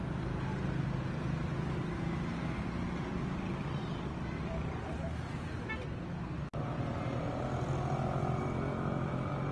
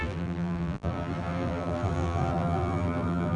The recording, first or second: first